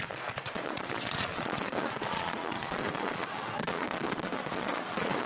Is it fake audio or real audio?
fake